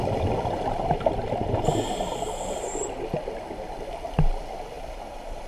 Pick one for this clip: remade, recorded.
recorded